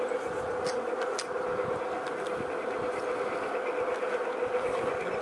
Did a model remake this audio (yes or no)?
no